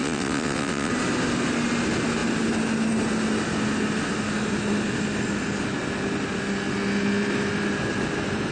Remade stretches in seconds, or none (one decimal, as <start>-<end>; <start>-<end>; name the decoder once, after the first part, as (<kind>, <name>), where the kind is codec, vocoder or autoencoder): 0.0-0.9 (vocoder, WaveNeXt)